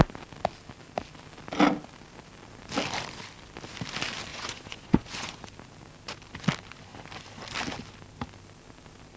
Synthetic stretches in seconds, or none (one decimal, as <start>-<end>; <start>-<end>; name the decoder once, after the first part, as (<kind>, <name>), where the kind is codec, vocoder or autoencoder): 4.3-5.4 (vocoder, Vocos)